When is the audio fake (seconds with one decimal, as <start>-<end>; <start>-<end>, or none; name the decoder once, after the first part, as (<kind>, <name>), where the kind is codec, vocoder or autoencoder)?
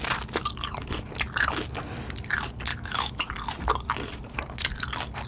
2.7-3.3 (autoencoder, DAC-VAE)